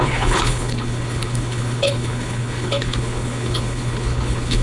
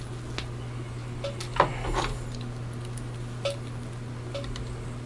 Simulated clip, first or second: first